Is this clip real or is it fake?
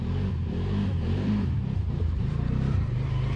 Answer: fake